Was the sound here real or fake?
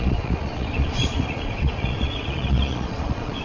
fake